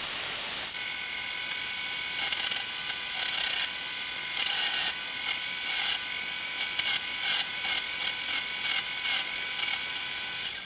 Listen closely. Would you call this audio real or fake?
real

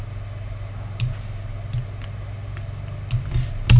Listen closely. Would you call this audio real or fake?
real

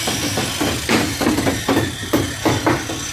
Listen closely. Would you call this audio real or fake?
real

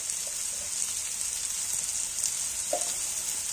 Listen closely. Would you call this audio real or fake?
real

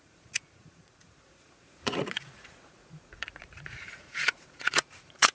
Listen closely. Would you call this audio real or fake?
fake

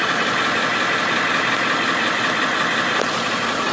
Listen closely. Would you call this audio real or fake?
real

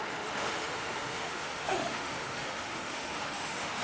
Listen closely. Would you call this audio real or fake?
fake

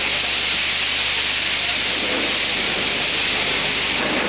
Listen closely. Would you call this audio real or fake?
real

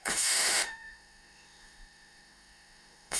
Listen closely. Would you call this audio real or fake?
fake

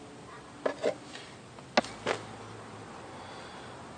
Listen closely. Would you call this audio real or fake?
real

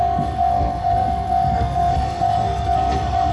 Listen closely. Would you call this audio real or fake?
fake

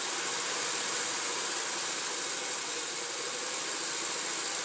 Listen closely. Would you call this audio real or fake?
real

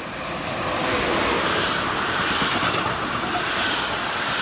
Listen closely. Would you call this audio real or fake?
real